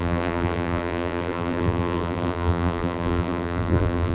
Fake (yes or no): yes